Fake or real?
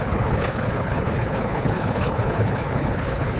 fake